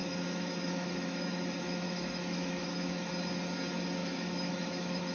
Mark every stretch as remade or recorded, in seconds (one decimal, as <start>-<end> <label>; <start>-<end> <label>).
0.0-3.1 remade; 3.1-4.0 recorded; 4.0-5.1 remade